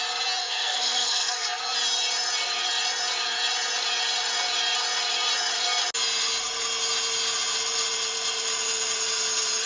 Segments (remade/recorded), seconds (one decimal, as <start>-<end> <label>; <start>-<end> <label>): 0.0-0.4 recorded; 0.4-1.6 remade; 1.6-9.7 recorded